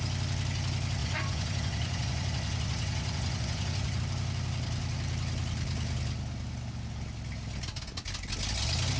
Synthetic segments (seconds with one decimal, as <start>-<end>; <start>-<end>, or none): 1.0-4.0